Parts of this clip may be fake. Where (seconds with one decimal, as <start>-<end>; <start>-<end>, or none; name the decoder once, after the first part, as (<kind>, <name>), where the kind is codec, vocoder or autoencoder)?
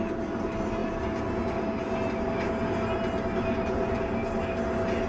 none